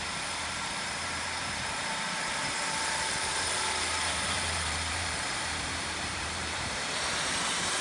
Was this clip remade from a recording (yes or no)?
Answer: yes